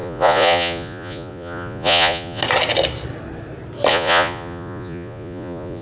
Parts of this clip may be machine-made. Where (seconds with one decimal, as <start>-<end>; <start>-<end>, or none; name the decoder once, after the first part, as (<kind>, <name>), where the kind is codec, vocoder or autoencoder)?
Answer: 0.0-2.4 (vocoder, Vocos); 3.9-5.8